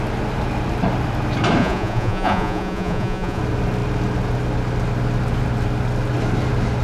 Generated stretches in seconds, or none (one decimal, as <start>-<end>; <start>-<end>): 1.6-3.4